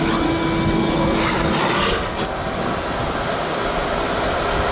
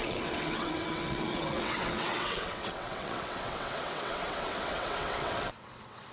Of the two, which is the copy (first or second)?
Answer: second